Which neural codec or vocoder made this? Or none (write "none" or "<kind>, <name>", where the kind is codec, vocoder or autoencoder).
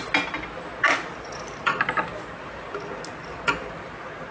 none